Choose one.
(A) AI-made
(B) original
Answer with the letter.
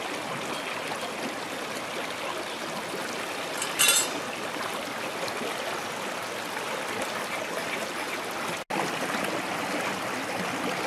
B